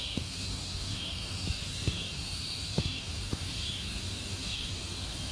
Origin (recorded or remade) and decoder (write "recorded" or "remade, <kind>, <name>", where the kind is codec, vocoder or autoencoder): remade, codec, DAC